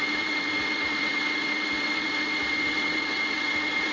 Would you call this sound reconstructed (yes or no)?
yes